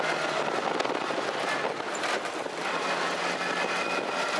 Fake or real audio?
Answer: real